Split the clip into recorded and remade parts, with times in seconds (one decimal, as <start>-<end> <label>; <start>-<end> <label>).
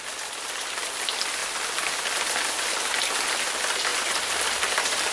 0.0-3.9 recorded; 3.9-5.1 remade